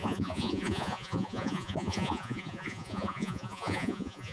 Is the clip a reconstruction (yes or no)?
yes